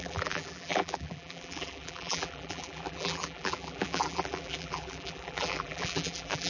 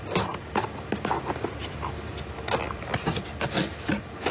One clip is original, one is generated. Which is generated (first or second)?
first